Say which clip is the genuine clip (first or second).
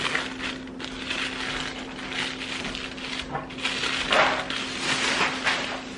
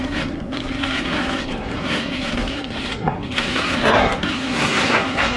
first